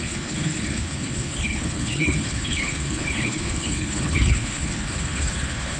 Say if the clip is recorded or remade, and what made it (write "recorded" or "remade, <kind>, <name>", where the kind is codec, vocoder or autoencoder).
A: remade, codec, HILCodec